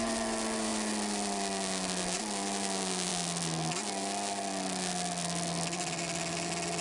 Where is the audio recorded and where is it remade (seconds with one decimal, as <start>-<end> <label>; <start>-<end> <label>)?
0.0-6.8 recorded